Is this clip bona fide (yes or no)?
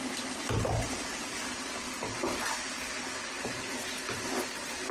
no